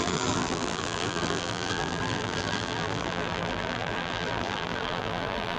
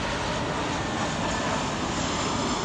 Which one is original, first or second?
second